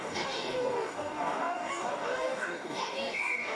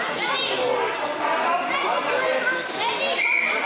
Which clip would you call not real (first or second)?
first